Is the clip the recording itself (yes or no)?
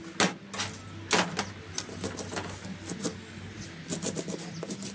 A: yes